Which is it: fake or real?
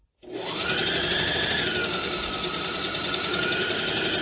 real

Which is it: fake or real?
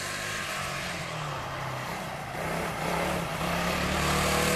real